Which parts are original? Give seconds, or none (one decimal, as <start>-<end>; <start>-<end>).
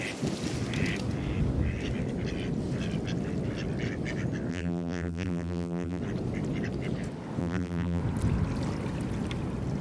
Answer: 0.0-4.5; 6.0-7.4; 8.0-9.8